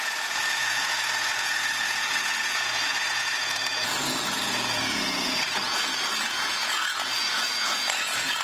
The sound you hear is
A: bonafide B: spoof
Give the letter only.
B